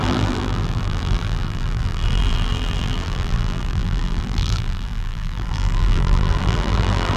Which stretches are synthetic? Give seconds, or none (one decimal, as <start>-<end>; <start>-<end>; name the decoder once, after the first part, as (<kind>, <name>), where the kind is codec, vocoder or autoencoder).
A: 0.0-7.2 (vocoder, BigVGAN v2)